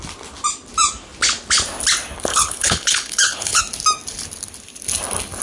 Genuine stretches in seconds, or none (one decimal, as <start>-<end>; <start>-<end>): 0.0-2.3; 3.6-5.4